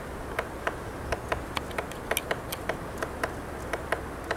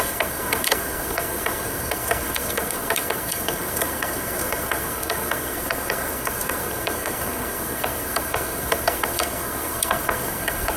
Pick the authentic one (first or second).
first